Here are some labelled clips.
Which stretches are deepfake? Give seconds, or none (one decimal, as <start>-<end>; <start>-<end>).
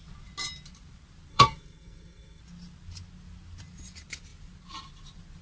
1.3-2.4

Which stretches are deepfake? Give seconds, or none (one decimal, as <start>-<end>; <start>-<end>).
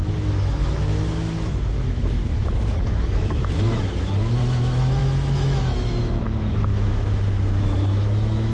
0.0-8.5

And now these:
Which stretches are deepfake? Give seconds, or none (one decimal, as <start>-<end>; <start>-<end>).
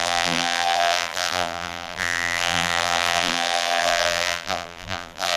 0.0-5.4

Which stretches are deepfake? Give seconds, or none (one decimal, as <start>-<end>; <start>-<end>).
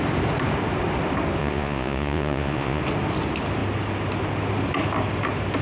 1.4-2.8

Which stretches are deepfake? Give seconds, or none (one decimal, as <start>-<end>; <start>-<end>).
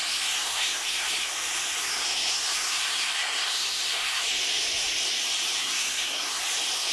0.4-1.3; 1.8-4.3; 5.6-6.4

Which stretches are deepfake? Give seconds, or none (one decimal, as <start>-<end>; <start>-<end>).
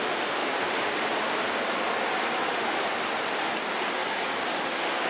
4.0-5.1